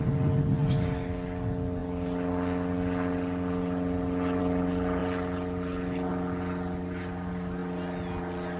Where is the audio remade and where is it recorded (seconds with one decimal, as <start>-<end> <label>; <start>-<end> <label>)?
0.0-8.6 recorded

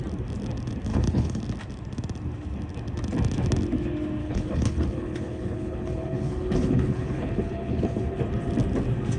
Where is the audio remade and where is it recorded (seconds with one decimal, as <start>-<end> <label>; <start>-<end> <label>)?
0.0-0.9 recorded; 0.9-1.4 remade; 1.4-4.2 recorded; 4.2-8.2 remade; 8.2-9.2 recorded

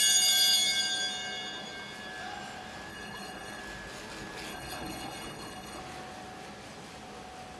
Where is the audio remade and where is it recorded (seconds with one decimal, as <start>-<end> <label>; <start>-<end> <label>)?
0.0-2.9 recorded; 2.9-3.6 remade; 3.6-4.5 recorded; 4.5-5.8 remade; 5.8-7.6 recorded

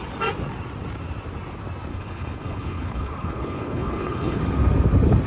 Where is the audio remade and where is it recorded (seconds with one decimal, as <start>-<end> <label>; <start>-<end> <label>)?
0.0-1.9 recorded; 1.9-4.4 remade; 4.4-5.3 recorded

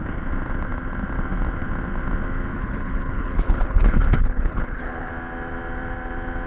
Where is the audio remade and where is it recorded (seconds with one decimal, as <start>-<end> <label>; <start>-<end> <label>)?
0.0-2.5 recorded; 2.5-5.1 remade; 5.1-6.5 recorded

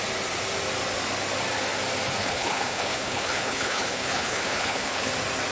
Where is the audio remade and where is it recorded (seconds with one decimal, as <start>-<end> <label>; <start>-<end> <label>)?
0.0-2.2 recorded; 2.2-5.1 remade; 5.1-5.5 recorded

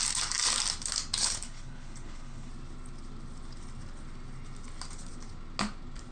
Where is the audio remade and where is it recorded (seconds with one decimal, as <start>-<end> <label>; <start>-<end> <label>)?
0.0-1.2 recorded; 1.2-2.5 remade; 2.5-6.1 recorded